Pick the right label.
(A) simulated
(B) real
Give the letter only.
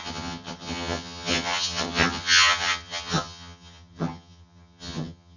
A